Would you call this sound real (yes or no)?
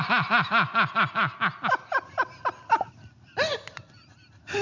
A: yes